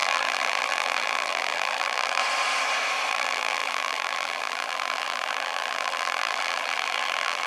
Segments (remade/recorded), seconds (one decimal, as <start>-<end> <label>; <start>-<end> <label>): 0.0-2.2 remade; 2.2-3.1 recorded; 3.1-7.5 remade